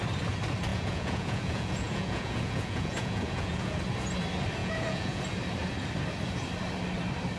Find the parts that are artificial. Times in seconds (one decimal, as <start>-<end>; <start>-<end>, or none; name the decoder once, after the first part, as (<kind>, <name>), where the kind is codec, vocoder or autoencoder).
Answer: 0.7-3.8 (vocoder, Vocos); 4.6-5.2